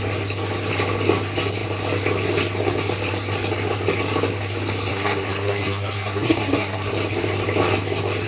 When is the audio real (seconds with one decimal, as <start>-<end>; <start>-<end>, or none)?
0.0-4.9; 6.9-8.3